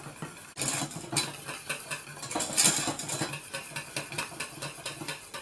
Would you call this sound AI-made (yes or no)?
no